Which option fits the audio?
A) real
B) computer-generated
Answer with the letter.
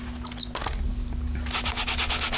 A